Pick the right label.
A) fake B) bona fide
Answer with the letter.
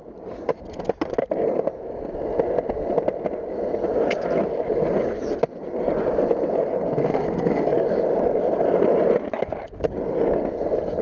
B